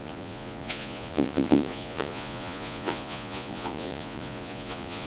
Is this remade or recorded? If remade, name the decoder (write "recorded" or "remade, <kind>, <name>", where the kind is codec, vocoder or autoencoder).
remade, vocoder, Vocos